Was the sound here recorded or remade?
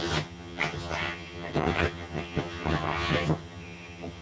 remade